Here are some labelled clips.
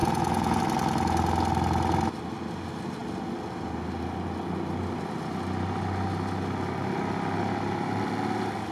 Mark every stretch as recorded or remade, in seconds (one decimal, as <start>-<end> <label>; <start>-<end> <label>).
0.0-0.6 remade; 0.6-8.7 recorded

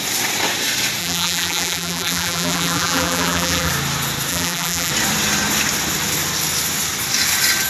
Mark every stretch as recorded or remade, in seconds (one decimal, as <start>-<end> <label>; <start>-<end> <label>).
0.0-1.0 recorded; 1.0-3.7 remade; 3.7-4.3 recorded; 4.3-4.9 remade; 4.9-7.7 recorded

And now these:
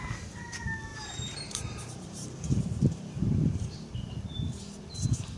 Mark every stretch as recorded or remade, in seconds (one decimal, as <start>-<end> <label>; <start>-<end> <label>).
0.0-0.9 recorded; 0.9-4.1 remade; 4.1-5.4 recorded